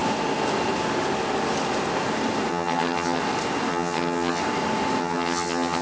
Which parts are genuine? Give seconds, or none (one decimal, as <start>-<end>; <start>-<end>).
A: 0.0-2.5; 3.2-3.7; 4.4-5.0